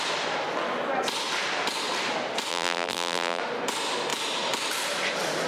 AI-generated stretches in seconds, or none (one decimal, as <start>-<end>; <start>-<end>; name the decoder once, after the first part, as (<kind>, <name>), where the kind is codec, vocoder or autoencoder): 2.5-3.4 (vocoder, BigVGAN v2)